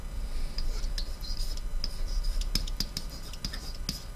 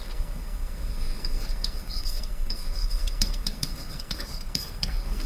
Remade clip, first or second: second